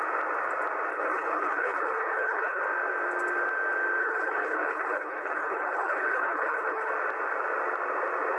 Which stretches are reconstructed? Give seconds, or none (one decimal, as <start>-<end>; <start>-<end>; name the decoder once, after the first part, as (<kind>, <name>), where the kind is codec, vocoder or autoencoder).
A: 0.9-2.6 (codec, HILCodec); 4.0-6.9